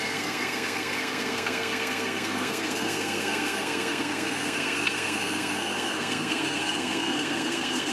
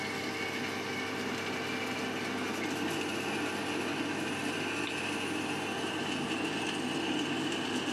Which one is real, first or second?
second